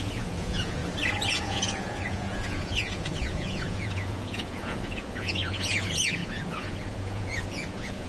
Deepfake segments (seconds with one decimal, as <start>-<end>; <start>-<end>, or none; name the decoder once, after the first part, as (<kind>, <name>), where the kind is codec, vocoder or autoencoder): 0.0-0.8 (vocoder, Vocos); 1.3-8.1